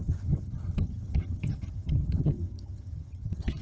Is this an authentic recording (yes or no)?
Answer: no